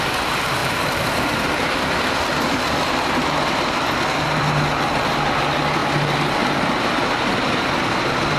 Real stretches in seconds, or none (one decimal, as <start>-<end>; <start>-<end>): 0.0-0.6; 1.8-8.4